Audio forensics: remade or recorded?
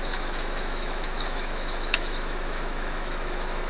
remade